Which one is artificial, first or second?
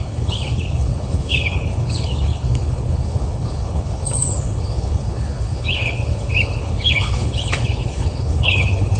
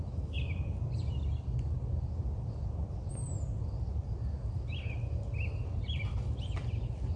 first